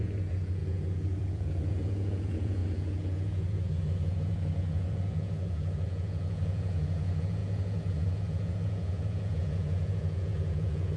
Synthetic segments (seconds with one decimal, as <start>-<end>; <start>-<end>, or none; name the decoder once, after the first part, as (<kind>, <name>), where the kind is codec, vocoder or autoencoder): 0.0-11.0 (vocoder, Vocos)